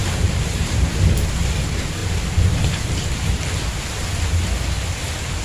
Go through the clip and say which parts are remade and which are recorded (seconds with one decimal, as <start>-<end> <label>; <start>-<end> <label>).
0.0-1.0 remade; 1.0-5.4 recorded

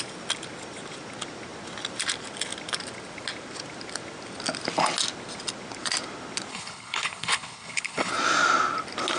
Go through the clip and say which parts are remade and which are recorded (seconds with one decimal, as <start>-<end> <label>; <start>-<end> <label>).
0.0-6.5 recorded; 6.5-8.1 remade; 8.1-9.2 recorded

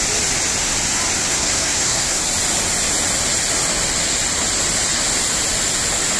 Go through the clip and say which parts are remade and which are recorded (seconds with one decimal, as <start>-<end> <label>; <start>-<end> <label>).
0.0-1.3 recorded; 1.3-2.2 remade; 2.2-6.2 recorded